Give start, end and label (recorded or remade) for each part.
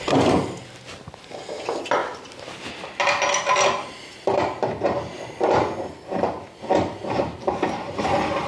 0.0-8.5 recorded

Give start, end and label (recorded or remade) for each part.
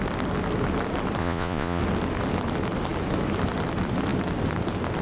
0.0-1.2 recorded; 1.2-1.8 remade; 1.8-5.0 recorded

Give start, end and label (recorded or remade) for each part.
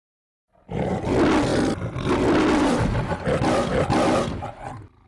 0.0-5.1 recorded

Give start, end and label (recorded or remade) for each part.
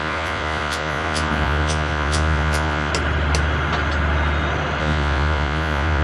0.0-2.9 remade; 2.9-4.8 recorded; 4.8-6.0 remade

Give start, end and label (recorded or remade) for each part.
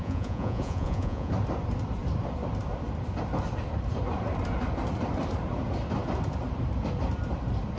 0.0-1.3 remade; 1.3-7.8 recorded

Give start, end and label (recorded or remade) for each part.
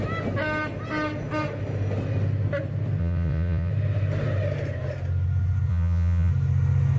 0.0-3.0 recorded; 3.0-3.7 remade; 3.7-5.7 recorded; 5.7-6.3 remade; 6.3-7.0 recorded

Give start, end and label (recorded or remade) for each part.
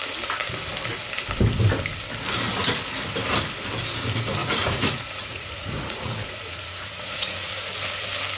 0.0-4.4 recorded; 4.4-7.5 remade; 7.5-8.4 recorded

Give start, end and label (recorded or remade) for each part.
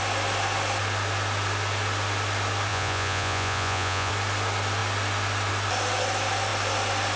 0.0-2.7 recorded; 2.7-4.1 remade; 4.1-7.2 recorded